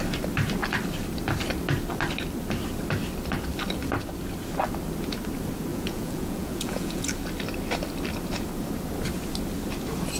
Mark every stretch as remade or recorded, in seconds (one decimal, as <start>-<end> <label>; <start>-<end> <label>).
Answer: 0.0-5.7 recorded; 5.7-7.1 remade; 7.1-10.2 recorded